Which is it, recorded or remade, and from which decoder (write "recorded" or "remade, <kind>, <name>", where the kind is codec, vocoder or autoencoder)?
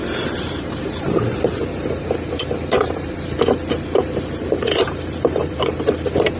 remade, vocoder, BigVGAN v2